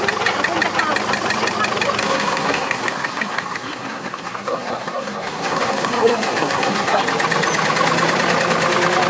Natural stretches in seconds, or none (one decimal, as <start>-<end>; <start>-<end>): 0.0-2.0; 7.0-9.1